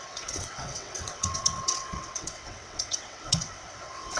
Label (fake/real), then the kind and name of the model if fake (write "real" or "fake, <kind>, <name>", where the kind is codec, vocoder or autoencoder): fake, vocoder, WaveNeXt